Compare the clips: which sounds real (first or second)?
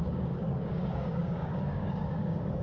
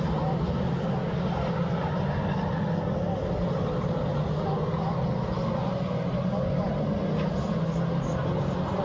second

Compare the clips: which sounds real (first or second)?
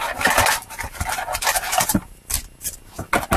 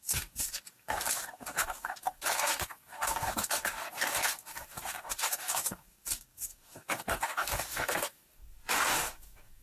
first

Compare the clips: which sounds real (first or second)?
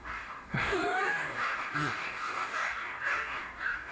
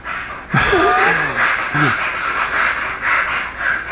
second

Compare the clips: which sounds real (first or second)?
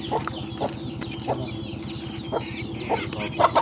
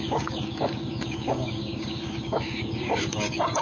first